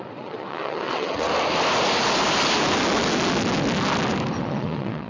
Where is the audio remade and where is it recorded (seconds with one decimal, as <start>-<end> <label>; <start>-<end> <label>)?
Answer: 0.0-1.3 remade; 1.3-4.4 recorded; 4.4-5.1 remade